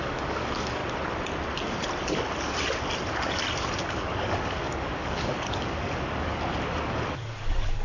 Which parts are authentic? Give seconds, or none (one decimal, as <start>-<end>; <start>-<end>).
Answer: 0.8-3.8